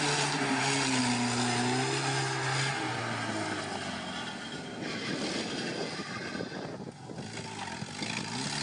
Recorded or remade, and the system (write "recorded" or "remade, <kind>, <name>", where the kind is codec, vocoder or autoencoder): recorded